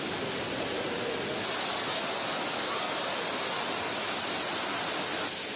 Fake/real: real